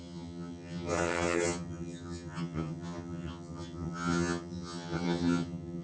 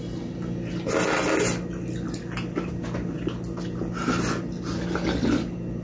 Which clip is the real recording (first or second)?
second